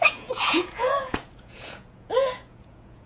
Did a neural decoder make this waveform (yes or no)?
yes